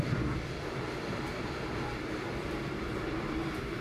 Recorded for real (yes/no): no